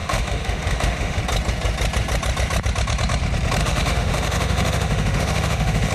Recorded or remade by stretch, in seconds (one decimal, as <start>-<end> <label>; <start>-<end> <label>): 0.0-1.2 remade; 1.2-3.6 recorded; 3.6-5.9 remade